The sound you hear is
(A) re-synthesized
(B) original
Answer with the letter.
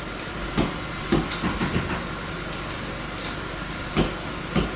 B